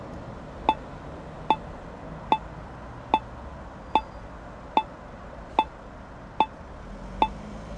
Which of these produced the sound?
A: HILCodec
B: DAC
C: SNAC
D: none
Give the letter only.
D